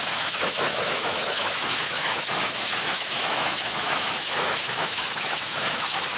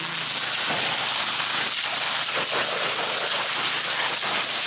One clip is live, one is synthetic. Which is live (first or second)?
second